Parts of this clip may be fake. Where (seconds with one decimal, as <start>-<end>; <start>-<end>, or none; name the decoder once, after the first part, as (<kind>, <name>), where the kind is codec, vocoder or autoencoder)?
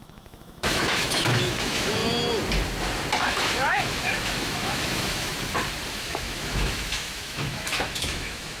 0.0-2.0 (autoencoder, DAC-VAE); 3.2-5.3; 5.9-8.6